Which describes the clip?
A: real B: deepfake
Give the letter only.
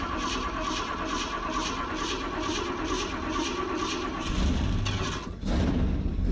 A